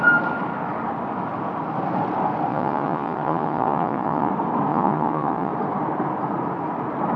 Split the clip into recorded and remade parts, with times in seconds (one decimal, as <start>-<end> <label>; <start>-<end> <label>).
0.0-2.5 recorded; 2.5-4.3 remade; 4.3-4.7 recorded; 4.7-5.5 remade; 5.5-7.2 recorded